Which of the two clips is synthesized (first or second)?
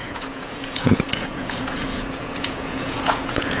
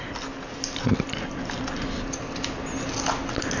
first